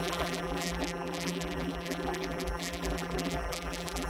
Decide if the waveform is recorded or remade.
remade